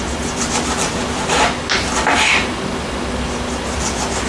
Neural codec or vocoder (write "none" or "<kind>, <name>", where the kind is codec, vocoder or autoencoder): none